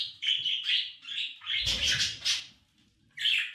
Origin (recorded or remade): recorded